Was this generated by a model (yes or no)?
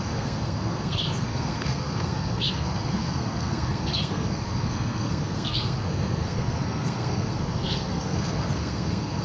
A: yes